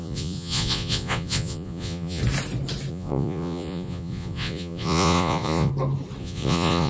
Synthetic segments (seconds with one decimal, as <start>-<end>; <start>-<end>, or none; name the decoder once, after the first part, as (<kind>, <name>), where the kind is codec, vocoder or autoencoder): 0.0-2.2 (vocoder, Vocos); 2.9-5.7; 6.2-6.9